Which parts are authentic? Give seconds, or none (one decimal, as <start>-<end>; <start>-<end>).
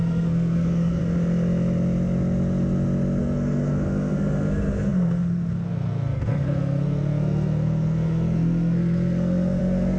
1.0-3.2